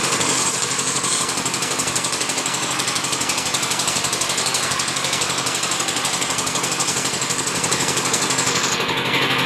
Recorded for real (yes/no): no